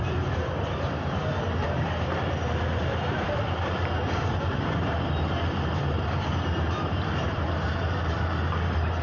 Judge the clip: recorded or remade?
remade